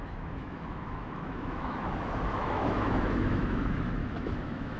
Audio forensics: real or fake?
fake